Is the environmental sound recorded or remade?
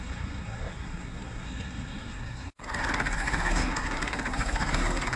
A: remade